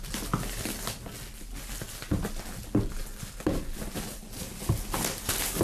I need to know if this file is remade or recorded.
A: recorded